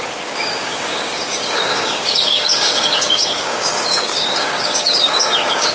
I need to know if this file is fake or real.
fake